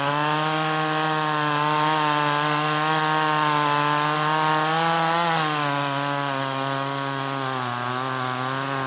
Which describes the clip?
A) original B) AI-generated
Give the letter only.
A